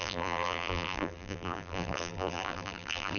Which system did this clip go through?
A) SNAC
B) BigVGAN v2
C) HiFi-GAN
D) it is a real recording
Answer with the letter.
B